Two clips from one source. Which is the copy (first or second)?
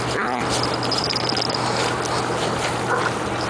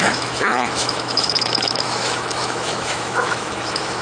second